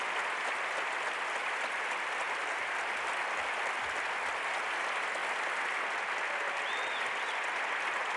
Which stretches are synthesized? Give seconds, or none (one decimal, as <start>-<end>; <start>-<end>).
none

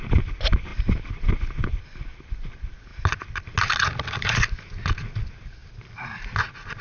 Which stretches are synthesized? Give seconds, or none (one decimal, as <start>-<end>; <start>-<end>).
none

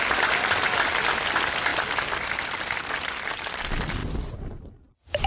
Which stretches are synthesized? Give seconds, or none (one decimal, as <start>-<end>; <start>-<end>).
none